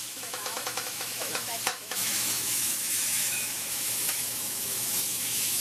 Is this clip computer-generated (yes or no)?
yes